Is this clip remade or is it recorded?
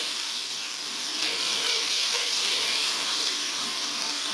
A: remade